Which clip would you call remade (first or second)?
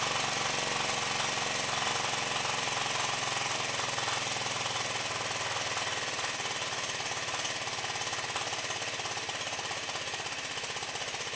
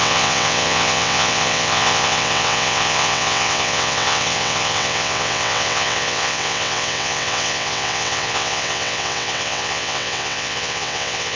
second